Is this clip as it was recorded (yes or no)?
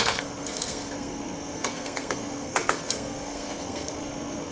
no